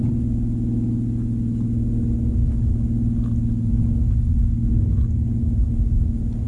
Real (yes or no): yes